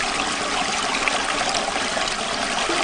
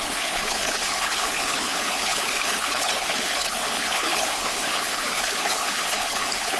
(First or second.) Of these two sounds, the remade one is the second